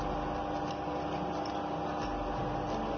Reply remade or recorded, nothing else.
recorded